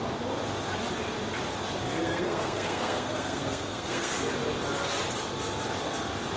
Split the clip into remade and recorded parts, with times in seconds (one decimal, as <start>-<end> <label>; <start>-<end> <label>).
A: 0.0-2.0 recorded; 2.0-4.1 remade; 4.1-6.4 recorded